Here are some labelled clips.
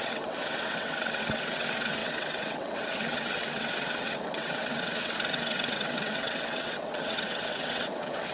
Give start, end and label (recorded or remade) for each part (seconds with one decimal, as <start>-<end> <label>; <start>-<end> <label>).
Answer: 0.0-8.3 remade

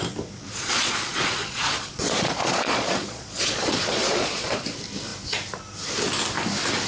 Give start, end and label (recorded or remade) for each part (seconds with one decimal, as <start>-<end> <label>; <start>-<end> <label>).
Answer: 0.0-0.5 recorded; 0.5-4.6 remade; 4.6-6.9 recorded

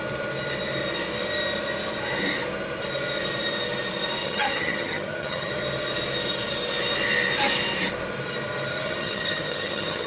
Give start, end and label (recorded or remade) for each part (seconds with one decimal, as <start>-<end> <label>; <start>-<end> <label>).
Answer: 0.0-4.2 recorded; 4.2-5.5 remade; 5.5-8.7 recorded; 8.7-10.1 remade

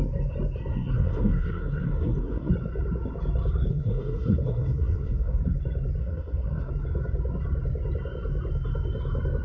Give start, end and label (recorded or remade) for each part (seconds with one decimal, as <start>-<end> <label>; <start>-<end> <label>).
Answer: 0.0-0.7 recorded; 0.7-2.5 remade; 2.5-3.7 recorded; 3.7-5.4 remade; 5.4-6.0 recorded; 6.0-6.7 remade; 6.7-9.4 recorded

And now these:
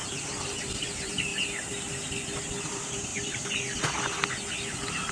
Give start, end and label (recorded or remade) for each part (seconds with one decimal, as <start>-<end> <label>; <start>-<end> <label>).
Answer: 0.0-1.3 remade; 1.3-2.6 recorded; 2.6-3.1 remade; 3.1-5.1 recorded

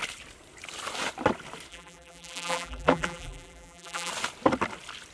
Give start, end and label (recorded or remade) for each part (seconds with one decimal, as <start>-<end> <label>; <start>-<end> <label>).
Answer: 0.0-1.7 recorded; 1.7-4.1 remade; 4.1-5.1 recorded